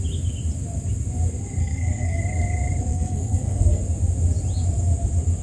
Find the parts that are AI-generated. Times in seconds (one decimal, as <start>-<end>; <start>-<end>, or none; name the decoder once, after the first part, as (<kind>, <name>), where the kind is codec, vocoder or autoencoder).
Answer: 1.6-2.2 (codec, SNAC); 2.9-3.8